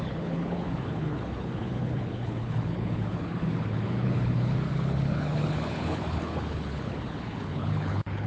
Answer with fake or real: fake